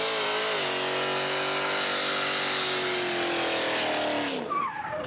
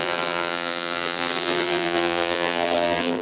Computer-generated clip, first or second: second